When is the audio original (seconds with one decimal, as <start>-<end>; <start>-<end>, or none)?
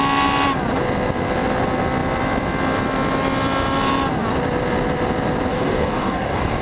0.0-5.5